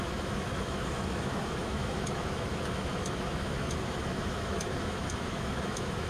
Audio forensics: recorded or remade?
remade